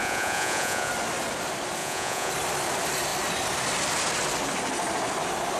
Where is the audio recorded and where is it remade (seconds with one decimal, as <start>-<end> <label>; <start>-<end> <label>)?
0.0-0.9 remade; 0.9-1.8 recorded; 1.8-2.3 remade; 2.3-5.6 recorded